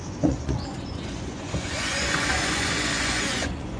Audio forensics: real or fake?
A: fake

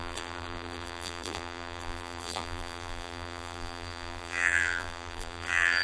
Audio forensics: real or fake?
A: fake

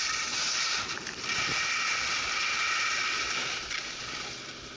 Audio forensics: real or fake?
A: real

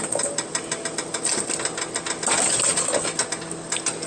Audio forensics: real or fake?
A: real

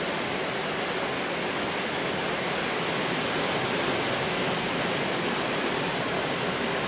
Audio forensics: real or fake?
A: real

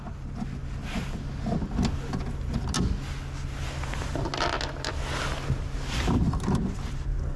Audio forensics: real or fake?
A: real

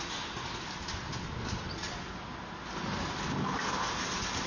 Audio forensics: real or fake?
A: real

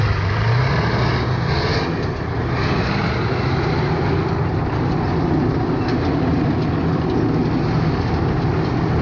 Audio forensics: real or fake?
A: real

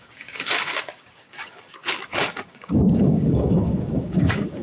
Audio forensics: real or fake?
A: fake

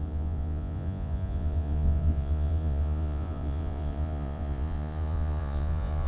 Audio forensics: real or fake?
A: fake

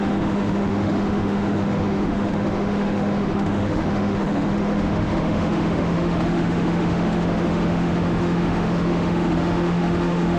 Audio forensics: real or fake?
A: fake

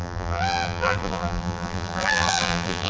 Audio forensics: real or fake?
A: fake